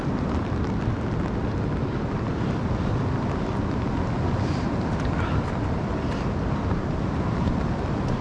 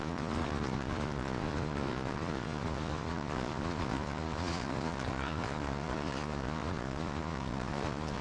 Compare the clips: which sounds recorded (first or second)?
first